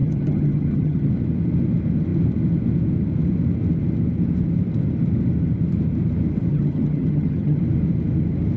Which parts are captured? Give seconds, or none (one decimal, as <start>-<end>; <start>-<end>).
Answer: 1.1-6.5; 7.6-8.6